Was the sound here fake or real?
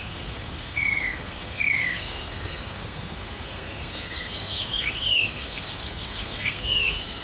fake